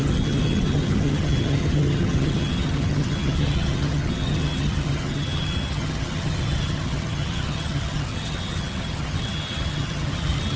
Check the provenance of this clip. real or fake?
fake